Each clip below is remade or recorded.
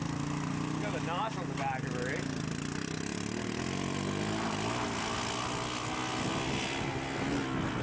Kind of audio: recorded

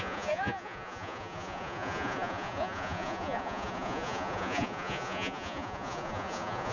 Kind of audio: remade